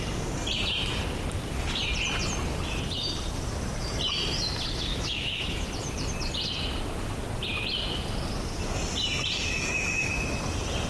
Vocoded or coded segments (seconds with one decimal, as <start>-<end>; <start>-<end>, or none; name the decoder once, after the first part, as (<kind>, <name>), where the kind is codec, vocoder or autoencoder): 4.9-5.7 (autoencoder, DAC-VAE)